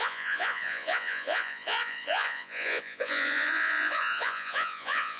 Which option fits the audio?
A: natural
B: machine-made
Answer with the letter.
B